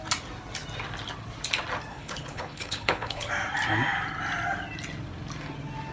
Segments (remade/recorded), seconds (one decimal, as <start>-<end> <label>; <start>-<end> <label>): 0.0-1.9 recorded; 1.9-3.3 remade; 3.3-5.9 recorded